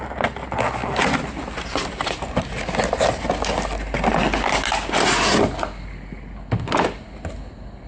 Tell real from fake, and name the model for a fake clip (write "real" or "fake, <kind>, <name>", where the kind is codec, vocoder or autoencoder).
real